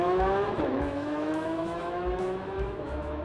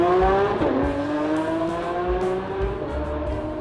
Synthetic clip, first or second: first